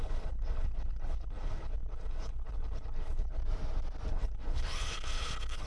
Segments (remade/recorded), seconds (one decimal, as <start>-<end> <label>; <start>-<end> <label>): 0.0-3.4 remade; 3.4-4.1 recorded; 4.1-5.7 remade